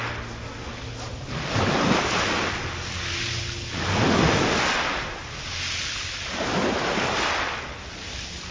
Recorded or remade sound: recorded